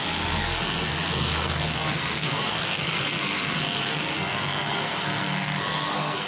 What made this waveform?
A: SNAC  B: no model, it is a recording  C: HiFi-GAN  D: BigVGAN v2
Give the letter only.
A